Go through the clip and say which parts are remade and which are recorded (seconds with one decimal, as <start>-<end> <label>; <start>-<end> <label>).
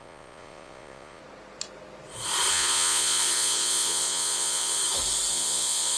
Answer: 0.0-1.2 remade; 1.2-2.5 recorded; 2.5-4.8 remade; 4.8-5.3 recorded; 5.3-6.0 remade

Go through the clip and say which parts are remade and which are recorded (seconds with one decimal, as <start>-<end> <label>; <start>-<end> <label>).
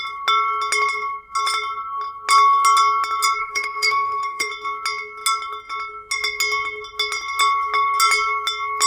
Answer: 0.0-3.4 recorded; 3.4-4.5 remade; 4.5-8.9 recorded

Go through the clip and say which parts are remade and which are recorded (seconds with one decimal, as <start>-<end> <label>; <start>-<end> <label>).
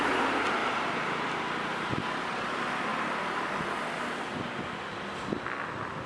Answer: 0.0-0.6 recorded; 0.6-1.3 remade; 1.3-6.1 recorded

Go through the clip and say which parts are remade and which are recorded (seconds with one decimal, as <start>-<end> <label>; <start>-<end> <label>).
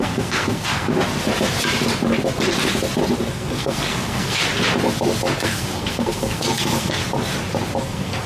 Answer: 0.0-0.9 remade; 0.9-3.3 recorded; 3.3-4.4 remade; 4.4-5.4 recorded; 5.4-7.0 remade; 7.0-7.8 recorded; 7.8-8.3 remade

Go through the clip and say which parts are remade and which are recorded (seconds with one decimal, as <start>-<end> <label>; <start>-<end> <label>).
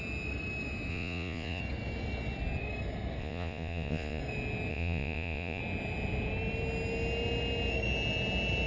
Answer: 0.0-0.9 recorded; 0.9-1.6 remade; 1.6-3.2 recorded; 3.2-4.2 remade; 4.2-4.7 recorded; 4.7-5.6 remade; 5.6-8.7 recorded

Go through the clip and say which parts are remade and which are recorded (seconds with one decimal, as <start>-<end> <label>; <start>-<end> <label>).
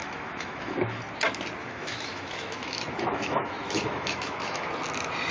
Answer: 0.0-1.0 remade; 1.0-1.6 recorded; 1.6-4.7 remade; 4.7-5.3 recorded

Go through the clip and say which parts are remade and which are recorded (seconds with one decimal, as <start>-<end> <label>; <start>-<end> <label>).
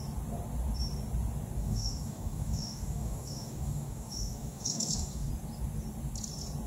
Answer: 0.0-1.6 recorded; 1.6-5.3 remade; 5.3-6.7 recorded